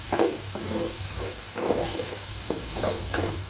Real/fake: fake